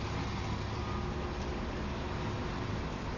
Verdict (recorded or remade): recorded